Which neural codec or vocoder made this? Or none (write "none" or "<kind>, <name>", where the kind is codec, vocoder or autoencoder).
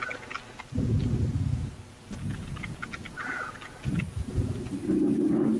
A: none